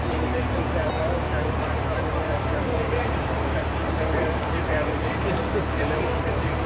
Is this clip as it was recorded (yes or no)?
no